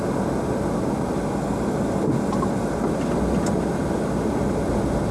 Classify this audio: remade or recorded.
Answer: recorded